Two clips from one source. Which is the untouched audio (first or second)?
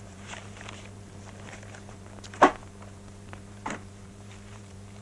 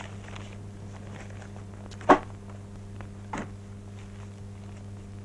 second